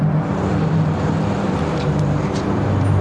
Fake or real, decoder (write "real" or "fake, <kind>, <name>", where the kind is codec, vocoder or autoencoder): fake, vocoder, BigVGAN v2